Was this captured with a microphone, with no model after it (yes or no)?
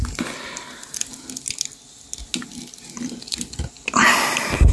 yes